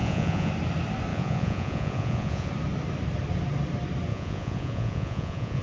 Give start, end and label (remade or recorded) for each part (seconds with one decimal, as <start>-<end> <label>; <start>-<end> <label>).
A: 0.0-0.5 remade; 0.5-1.1 recorded; 1.1-2.5 remade; 2.5-4.1 recorded; 4.1-5.6 remade